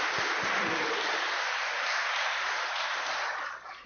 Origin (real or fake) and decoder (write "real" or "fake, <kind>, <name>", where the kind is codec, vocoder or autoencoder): fake, vocoder, BigVGAN v2